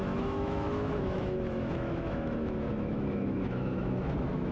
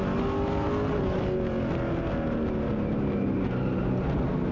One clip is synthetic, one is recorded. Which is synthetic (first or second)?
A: first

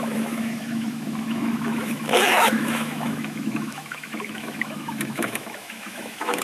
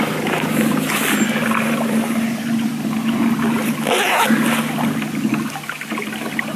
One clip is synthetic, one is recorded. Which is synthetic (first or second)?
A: first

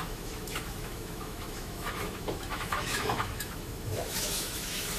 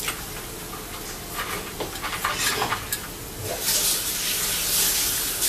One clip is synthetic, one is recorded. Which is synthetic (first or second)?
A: first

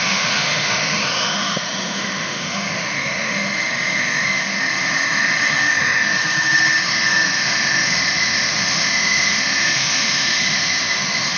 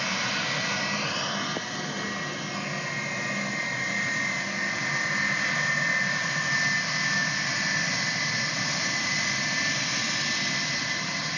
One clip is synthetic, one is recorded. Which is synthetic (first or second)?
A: first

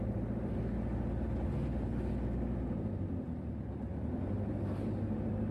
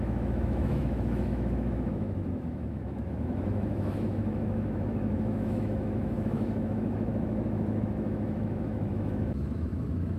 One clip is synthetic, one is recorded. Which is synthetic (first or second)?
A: second